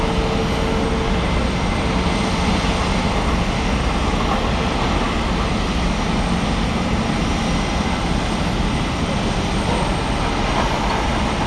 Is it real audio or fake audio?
real